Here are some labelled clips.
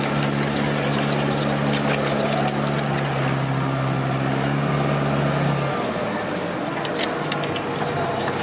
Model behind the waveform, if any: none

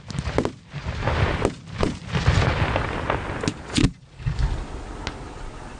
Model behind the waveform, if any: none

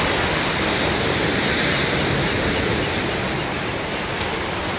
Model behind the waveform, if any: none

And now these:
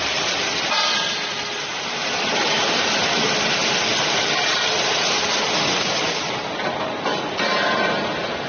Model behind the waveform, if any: none